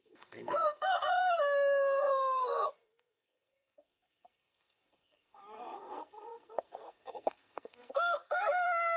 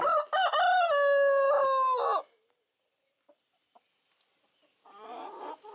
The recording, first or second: second